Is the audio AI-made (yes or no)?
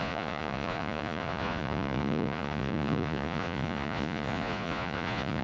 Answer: yes